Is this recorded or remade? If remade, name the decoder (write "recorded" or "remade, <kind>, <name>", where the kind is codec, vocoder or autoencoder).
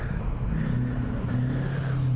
recorded